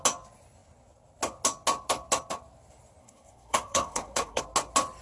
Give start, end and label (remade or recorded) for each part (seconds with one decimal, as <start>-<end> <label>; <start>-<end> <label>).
0.0-3.0 recorded; 3.0-4.4 remade; 4.4-5.0 recorded